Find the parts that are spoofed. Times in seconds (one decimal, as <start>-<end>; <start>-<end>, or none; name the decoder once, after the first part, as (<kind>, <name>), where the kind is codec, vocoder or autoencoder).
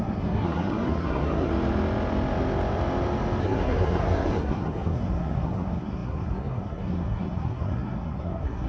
0.0-1.5 (codec, SNAC); 3.4-8.7